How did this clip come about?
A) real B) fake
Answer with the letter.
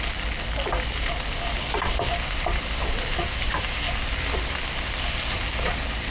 A